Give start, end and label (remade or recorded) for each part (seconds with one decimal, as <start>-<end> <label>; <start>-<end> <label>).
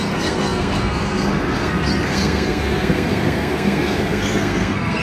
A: 0.0-5.0 remade